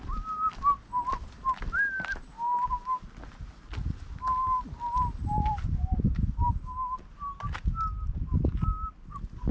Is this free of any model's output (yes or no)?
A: yes